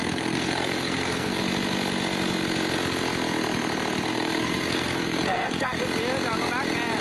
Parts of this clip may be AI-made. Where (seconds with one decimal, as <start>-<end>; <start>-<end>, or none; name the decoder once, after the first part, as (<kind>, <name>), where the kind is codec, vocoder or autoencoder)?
0.0-1.4 (codec, SNAC); 4.1-5.8

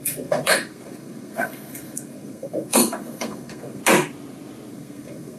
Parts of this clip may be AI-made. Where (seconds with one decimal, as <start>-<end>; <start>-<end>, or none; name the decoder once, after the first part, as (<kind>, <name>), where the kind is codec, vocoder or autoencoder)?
0.0-3.8 (codec, SNAC); 4.7-5.4

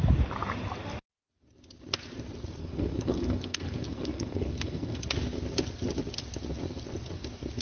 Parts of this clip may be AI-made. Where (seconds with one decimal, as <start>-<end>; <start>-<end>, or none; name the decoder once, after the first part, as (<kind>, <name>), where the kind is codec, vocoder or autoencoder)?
2.6-5.0 (codec, SNAC)

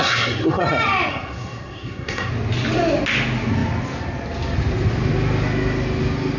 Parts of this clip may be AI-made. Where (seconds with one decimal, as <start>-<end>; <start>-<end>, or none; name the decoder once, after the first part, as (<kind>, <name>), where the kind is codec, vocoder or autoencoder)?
0.0-0.6 (codec, SNAC); 1.1-2.3